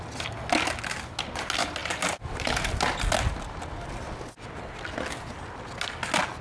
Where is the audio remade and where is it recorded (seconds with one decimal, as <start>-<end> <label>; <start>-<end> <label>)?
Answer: 0.0-6.4 recorded